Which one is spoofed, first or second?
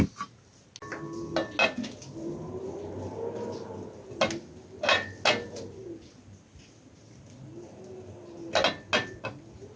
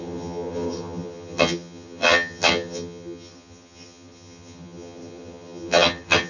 second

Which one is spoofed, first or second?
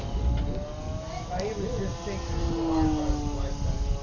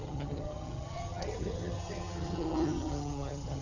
second